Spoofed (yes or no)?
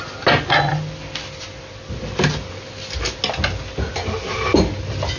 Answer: no